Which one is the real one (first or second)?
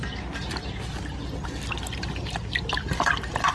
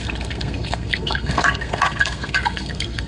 first